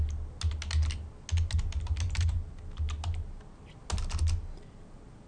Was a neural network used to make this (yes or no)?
no